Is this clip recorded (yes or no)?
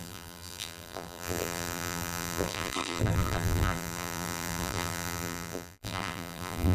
no